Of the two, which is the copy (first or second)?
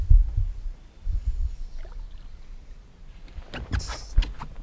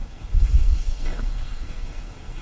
second